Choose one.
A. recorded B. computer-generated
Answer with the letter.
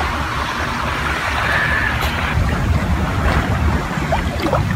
A